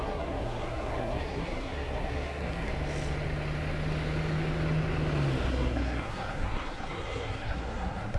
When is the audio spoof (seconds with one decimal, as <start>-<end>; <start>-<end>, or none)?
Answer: 0.0-2.7; 5.5-8.2